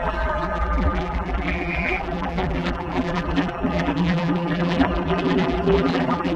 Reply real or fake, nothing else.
fake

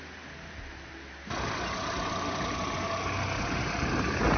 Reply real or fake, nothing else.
real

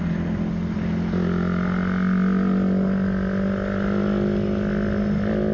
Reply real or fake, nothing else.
real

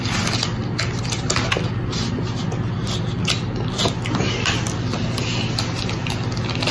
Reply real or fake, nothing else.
real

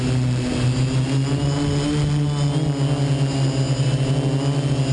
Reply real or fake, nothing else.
real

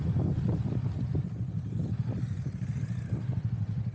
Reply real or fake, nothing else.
real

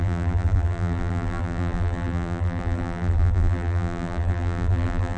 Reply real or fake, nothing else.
fake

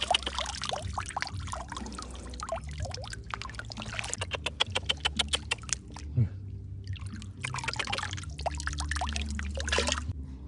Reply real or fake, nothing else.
real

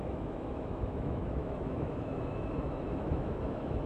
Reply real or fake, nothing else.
fake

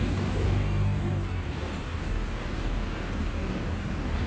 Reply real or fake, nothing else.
fake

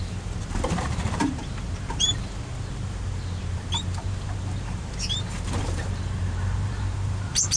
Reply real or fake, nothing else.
fake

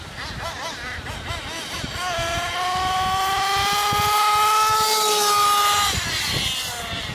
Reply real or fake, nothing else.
real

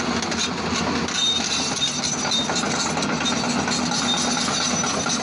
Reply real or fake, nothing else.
real